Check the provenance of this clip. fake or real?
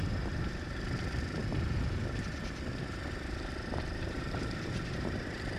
real